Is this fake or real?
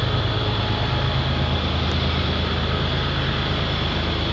real